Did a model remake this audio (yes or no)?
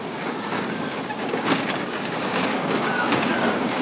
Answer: yes